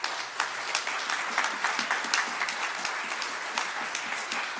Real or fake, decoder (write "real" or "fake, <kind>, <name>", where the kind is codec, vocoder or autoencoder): real